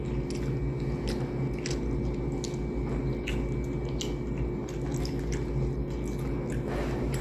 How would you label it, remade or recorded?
recorded